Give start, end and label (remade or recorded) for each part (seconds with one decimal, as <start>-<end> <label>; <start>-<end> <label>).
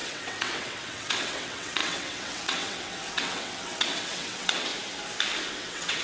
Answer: 0.0-4.7 remade; 4.7-5.5 recorded; 5.5-6.0 remade